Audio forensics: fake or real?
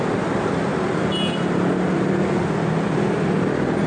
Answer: real